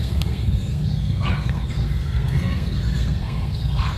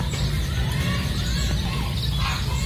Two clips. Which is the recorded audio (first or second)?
second